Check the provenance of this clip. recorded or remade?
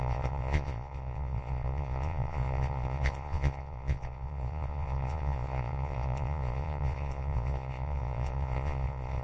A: remade